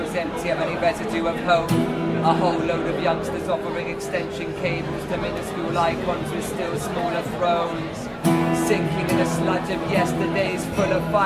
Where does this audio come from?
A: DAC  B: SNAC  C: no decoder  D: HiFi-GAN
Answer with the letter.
C